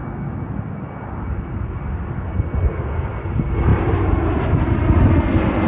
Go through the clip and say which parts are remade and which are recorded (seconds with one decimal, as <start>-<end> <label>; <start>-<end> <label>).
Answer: 0.0-3.7 recorded; 3.7-5.1 remade; 5.1-5.7 recorded